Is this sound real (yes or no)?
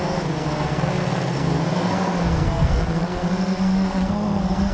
no